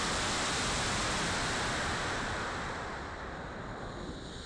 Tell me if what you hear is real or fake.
real